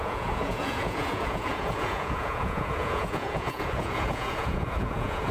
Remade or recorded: remade